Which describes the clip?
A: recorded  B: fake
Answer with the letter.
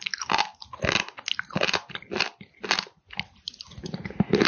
A